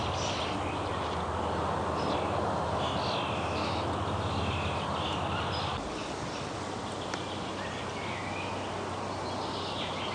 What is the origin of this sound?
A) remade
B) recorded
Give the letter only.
B